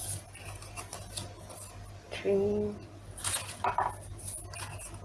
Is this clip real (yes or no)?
yes